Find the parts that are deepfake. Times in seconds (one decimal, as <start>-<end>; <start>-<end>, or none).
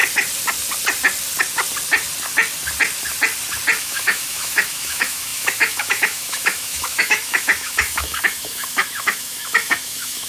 3.8-10.3